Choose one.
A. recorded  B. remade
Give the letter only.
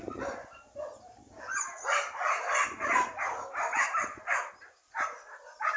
A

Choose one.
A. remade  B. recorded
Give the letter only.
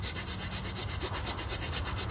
B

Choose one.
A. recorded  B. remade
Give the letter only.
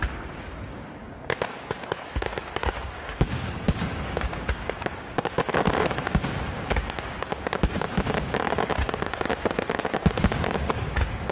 B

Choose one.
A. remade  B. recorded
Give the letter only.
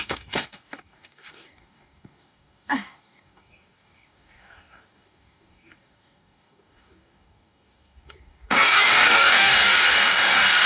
A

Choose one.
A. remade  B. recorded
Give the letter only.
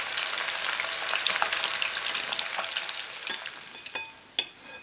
B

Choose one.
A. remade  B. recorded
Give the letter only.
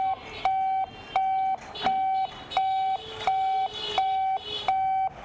B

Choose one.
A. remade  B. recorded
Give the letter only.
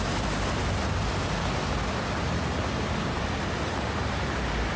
B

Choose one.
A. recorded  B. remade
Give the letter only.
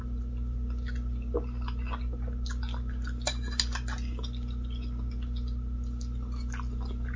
A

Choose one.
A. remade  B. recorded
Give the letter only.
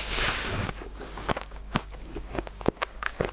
A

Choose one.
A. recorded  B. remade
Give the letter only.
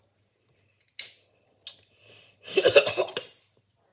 A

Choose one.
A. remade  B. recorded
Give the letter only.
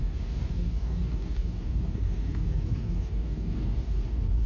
A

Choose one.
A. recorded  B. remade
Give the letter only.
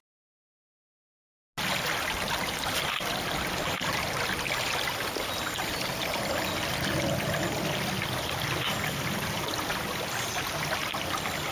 A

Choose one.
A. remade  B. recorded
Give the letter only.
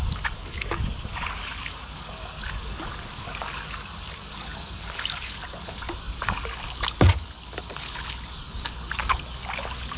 A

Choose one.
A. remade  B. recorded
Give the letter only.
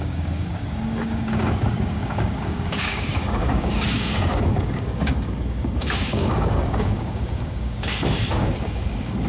A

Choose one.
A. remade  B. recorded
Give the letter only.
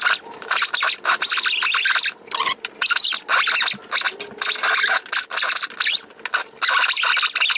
B